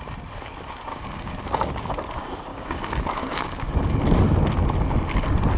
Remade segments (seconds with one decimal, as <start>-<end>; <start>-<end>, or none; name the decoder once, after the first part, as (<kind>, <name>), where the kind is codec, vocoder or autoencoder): 0.9-1.7 (codec, DAC); 2.5-3.6